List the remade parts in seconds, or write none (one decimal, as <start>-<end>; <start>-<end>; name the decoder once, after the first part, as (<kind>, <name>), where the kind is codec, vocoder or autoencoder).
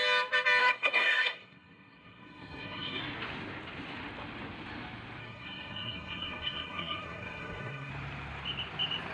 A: 0.6-3.0 (codec, SNAC); 5.2-7.9